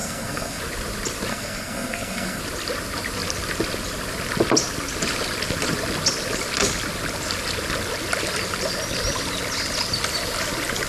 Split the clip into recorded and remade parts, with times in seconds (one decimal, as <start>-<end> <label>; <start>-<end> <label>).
0.0-0.6 remade; 0.6-1.3 recorded; 1.3-2.4 remade; 2.4-10.9 recorded